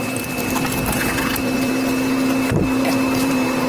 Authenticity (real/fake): fake